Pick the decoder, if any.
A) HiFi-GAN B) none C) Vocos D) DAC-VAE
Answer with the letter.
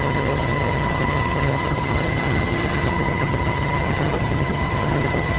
A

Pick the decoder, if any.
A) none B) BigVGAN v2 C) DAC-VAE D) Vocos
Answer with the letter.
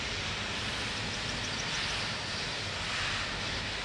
A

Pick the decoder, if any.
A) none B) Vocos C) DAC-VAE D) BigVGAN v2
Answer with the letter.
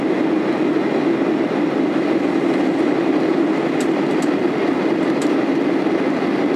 A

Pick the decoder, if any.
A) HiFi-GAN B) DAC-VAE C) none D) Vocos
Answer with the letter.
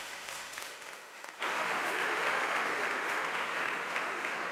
B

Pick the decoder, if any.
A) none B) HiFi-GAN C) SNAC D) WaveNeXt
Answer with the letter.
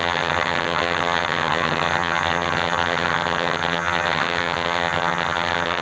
B